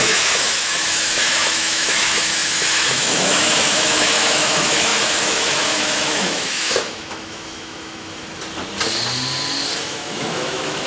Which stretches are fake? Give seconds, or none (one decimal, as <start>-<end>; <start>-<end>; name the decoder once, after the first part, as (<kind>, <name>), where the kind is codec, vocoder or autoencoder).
0.0-8.2 (autoencoder, DAC-VAE); 9.8-10.9